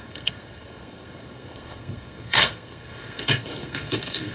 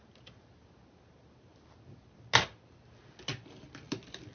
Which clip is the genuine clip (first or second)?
second